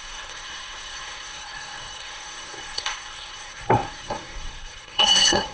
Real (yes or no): no